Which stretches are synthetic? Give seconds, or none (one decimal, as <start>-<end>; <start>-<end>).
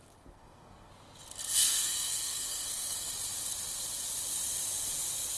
0.0-0.9; 1.6-3.1